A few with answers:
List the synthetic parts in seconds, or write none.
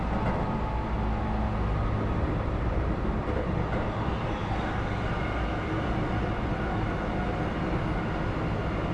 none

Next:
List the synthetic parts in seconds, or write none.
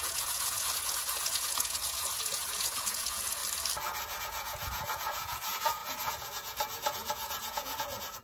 0.0-3.4 (vocoder, Vocos); 4.2-8.2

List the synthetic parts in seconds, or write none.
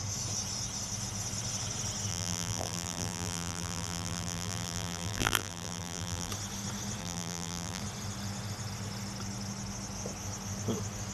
2.1-6.3 (vocoder, BigVGAN v2); 7.0-7.8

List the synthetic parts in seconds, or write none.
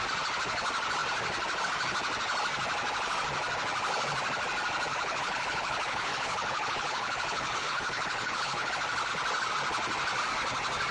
4.9-8.7 (codec, HILCodec)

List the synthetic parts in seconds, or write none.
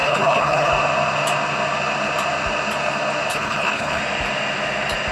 0.0-0.7 (codec, HILCodec); 3.3-4.0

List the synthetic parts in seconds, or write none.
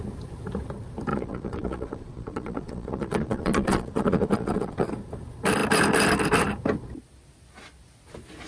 1.1-4.9 (vocoder, Vocos)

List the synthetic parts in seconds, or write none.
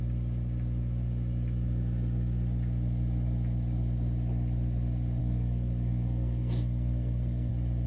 5.2-7.5 (codec, SNAC)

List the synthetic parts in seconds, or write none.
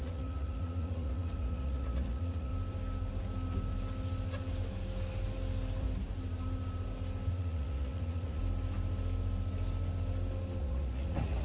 0.0-2.5 (vocoder, Vocos); 7.3-8.4; 10.6-11.4